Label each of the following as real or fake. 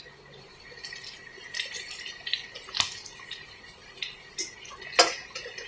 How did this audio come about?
real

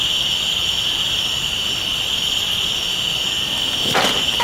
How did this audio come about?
real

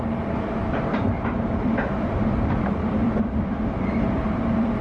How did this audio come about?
fake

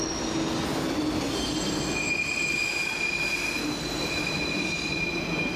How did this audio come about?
real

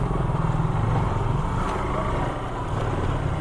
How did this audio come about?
real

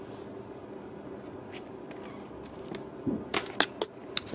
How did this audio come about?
real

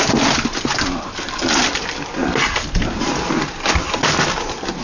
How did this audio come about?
real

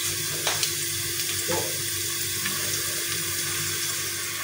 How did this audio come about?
real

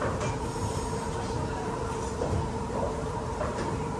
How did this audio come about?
fake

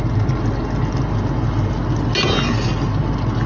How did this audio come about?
real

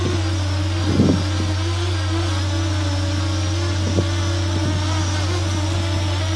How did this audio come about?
real